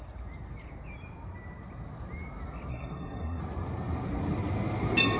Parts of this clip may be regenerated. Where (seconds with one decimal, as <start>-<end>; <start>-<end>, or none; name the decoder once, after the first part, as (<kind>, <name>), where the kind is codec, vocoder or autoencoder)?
2.7-3.4 (codec, SNAC)